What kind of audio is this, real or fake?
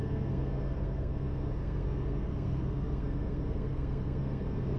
fake